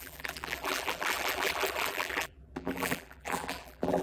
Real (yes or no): no